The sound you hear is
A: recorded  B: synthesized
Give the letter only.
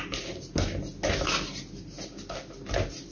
A